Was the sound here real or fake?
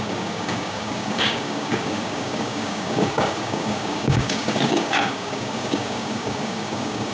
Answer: fake